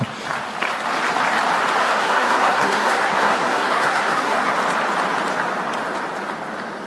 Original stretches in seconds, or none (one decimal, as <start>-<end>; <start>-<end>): 0.0-1.8; 4.5-6.9